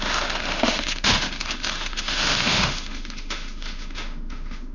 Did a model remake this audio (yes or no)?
yes